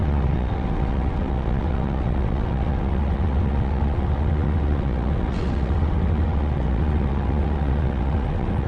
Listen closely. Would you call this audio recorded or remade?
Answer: remade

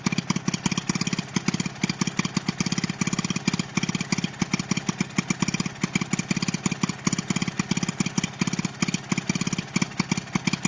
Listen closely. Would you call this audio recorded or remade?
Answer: recorded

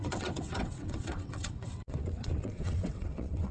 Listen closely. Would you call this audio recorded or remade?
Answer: remade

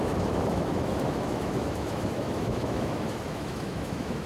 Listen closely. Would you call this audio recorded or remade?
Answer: remade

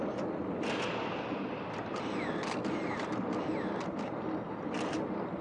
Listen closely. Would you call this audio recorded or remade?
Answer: recorded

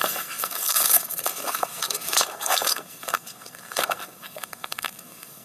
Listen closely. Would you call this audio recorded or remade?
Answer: remade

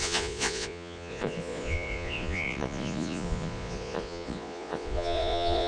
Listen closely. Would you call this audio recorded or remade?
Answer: remade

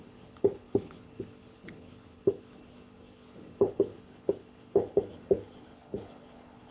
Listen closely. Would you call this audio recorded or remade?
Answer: remade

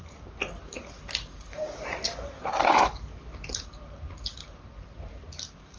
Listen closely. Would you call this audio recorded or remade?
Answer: recorded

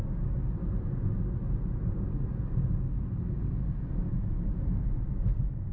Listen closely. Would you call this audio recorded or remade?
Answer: recorded